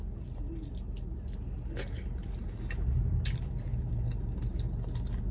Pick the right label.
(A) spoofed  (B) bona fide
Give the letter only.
B